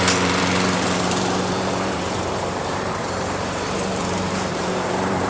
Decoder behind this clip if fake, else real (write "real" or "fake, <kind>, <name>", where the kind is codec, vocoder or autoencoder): fake, vocoder, BigVGAN v2